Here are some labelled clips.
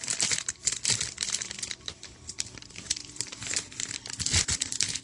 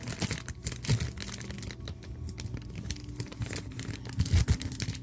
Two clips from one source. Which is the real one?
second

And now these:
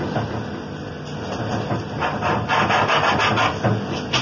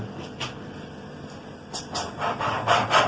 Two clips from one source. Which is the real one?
first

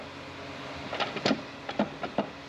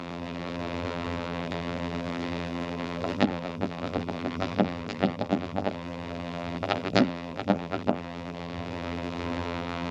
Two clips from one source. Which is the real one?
first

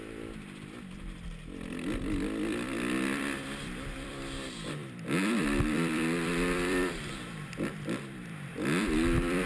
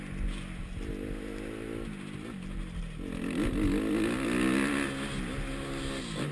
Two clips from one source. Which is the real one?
second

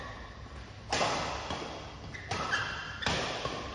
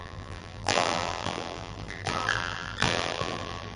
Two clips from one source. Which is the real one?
first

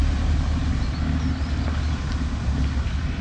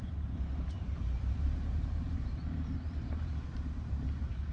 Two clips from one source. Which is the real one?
first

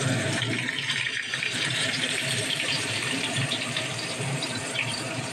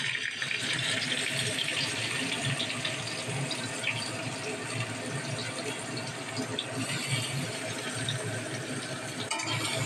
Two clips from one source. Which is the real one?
second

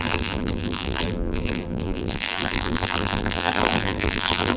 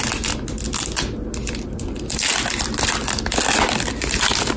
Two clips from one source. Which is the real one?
second